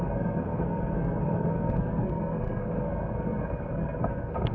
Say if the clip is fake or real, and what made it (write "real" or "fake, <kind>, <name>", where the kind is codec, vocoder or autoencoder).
fake, codec, SNAC